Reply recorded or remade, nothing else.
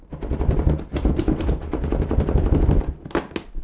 recorded